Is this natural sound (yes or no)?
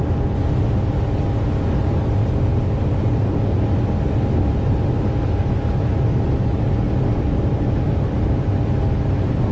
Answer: yes